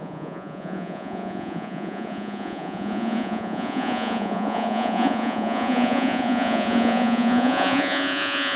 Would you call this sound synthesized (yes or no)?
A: yes